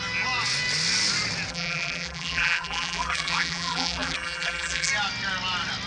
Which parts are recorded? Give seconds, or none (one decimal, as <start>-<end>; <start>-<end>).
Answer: 0.0-1.5; 4.9-5.9